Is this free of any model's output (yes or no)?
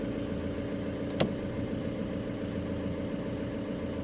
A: yes